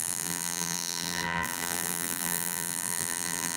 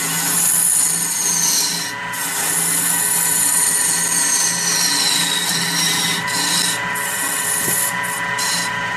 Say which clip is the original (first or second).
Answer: second